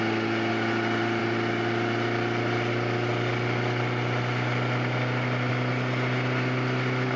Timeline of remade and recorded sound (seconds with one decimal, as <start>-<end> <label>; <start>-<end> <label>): 0.0-7.2 recorded